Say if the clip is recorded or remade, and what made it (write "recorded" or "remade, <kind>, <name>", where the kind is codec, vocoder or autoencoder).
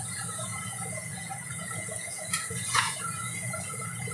remade, vocoder, Vocos